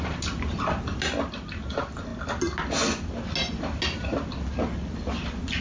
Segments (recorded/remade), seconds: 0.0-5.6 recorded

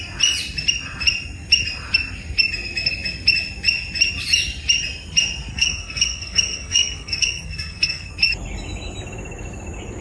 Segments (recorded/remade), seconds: 0.0-5.5 recorded; 5.5-8.1 remade; 8.1-10.0 recorded

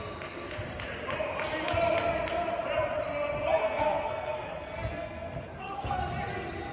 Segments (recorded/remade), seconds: 0.0-3.6 recorded; 3.6-6.0 remade; 6.0-6.7 recorded